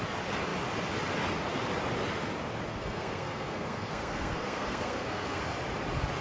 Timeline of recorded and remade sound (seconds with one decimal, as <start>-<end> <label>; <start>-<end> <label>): 0.0-2.7 recorded; 2.7-5.4 remade; 5.4-6.2 recorded